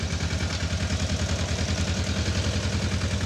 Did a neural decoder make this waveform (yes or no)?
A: no